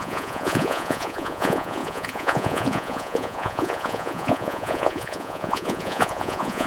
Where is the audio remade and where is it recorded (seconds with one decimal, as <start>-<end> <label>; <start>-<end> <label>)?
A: 0.0-6.7 remade

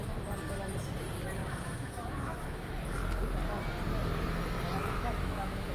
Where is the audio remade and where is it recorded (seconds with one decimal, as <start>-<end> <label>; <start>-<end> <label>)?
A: 0.0-1.4 recorded; 1.4-2.7 remade; 2.7-4.8 recorded; 4.8-5.7 remade